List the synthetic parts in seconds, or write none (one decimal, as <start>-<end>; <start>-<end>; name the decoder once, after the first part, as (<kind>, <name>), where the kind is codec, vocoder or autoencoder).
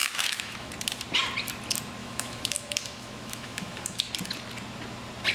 0.0-0.7 (autoencoder, DAC-VAE); 2.0-4.1